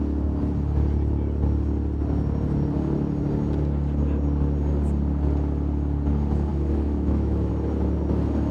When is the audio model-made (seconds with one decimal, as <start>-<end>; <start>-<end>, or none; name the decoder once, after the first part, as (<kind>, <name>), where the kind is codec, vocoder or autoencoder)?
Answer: 6.5-7.5 (autoencoder, DAC-VAE)